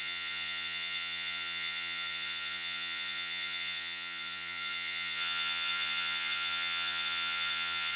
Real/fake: fake